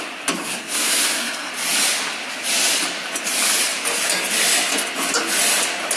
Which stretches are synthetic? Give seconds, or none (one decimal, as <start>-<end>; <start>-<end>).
0.4-1.5